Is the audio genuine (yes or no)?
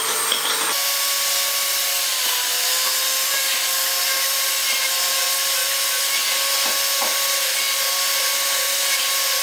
yes